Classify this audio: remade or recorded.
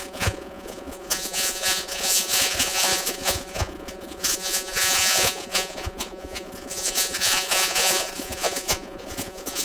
remade